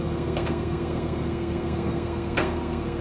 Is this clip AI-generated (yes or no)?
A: yes